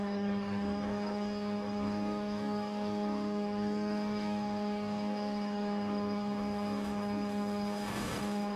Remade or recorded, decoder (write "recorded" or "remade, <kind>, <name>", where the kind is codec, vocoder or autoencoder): remade, codec, DAC